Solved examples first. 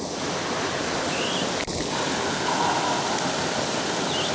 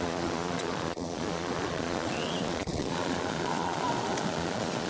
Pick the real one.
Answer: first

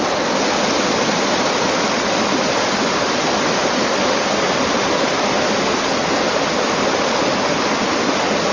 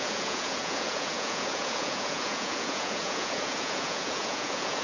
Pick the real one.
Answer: first